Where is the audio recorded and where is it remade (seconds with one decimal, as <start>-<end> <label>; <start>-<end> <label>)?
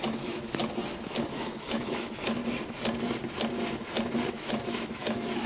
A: 0.0-0.6 remade; 0.6-1.2 recorded; 1.2-2.4 remade; 2.4-4.3 recorded; 4.3-5.5 remade